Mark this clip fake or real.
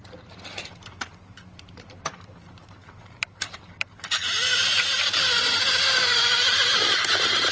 fake